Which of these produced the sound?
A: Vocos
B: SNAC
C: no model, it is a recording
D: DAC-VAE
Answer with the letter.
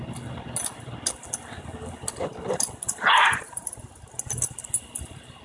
C